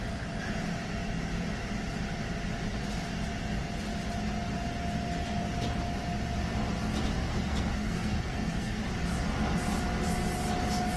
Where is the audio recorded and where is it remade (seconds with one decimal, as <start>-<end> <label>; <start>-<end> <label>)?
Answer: 0.0-7.3 recorded; 7.3-8.8 remade; 8.8-11.0 recorded